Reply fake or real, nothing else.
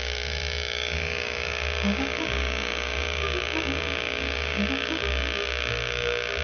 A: fake